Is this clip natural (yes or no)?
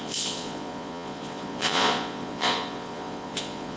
no